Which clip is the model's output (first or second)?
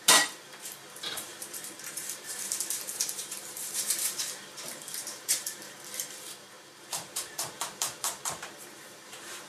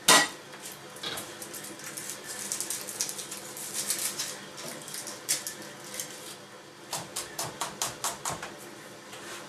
first